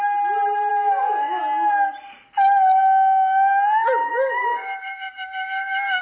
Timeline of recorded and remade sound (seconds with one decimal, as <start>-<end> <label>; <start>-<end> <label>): 0.0-0.7 recorded; 0.7-1.4 remade; 1.4-4.0 recorded; 4.0-6.0 remade